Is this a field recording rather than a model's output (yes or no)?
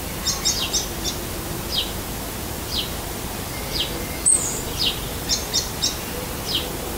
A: yes